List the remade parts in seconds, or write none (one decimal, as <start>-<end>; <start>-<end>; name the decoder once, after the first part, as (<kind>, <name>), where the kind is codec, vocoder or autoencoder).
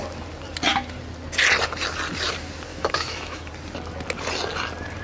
2.7-3.5 (autoencoder, DAC-VAE)